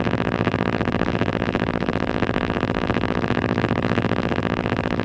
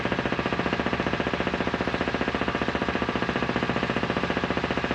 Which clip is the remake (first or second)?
first